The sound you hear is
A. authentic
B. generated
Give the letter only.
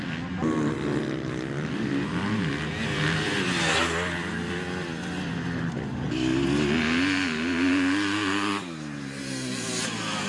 A